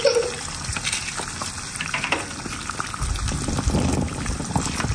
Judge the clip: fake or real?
real